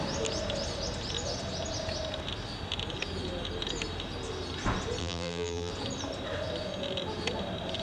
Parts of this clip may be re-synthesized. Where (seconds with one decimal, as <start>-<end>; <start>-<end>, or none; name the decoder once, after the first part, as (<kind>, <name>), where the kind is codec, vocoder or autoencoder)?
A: 5.0-5.7 (vocoder, BigVGAN v2)